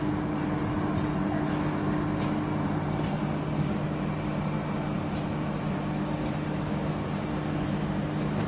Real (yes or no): yes